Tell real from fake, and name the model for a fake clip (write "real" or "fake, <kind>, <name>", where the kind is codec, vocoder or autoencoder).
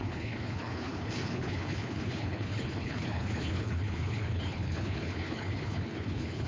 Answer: fake, codec, HILCodec